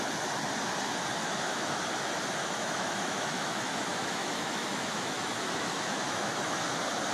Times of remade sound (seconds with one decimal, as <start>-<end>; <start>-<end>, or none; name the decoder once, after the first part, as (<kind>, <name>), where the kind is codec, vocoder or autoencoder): 1.2-1.8 (autoencoder, DAC-VAE); 2.4-6.6